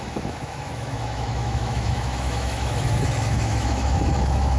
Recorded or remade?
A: remade